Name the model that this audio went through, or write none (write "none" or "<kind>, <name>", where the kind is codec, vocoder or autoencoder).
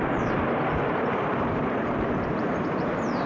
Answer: vocoder, BigVGAN v2